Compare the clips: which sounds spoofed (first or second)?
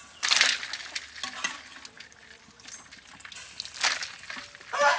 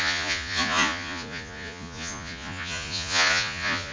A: second